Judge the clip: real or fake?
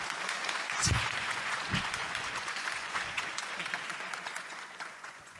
fake